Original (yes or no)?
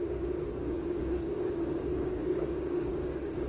no